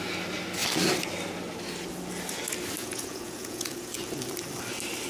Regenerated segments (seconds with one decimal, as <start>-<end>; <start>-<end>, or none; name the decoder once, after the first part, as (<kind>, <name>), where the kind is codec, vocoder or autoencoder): 2.8-3.9 (vocoder, Vocos)